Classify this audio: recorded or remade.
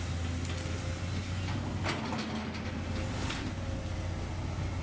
recorded